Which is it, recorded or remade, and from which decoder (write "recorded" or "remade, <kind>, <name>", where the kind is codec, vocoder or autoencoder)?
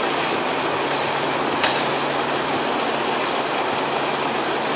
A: recorded